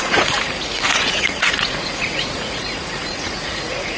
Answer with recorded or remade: remade